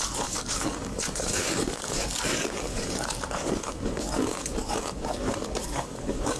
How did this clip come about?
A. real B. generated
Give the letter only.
B